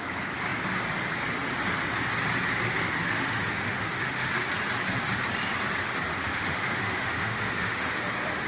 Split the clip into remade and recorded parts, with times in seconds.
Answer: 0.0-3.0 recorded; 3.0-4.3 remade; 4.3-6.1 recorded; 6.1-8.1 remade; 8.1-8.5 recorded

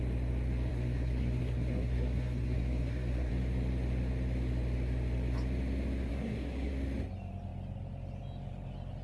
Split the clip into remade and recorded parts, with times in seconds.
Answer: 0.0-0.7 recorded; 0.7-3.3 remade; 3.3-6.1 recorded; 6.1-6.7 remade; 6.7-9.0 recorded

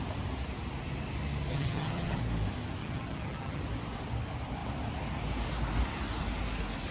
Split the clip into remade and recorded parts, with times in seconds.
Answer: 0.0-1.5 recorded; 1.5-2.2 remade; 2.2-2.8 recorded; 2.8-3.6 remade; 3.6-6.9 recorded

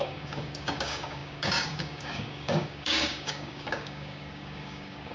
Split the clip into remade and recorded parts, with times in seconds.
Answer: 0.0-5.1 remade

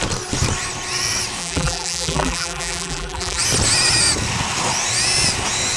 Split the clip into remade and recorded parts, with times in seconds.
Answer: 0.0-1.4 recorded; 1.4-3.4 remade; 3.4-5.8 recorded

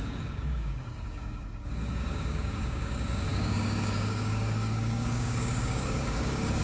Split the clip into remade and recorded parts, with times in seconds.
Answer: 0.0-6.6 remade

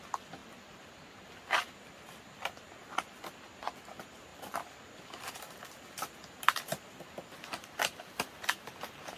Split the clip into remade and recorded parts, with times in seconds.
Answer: 0.0-0.4 recorded; 0.4-1.3 remade; 1.3-4.3 recorded; 4.3-5.0 remade; 5.0-9.2 recorded